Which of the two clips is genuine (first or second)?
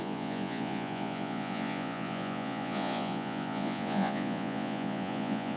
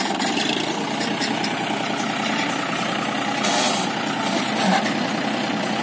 second